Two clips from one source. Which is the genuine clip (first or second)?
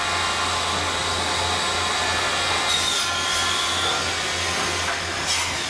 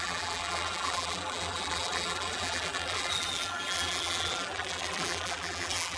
first